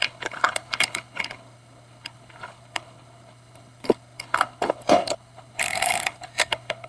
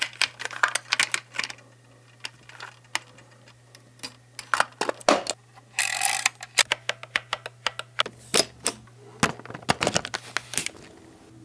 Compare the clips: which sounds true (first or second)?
second